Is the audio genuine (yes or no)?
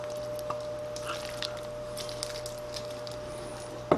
yes